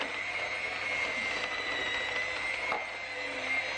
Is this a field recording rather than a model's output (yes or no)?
yes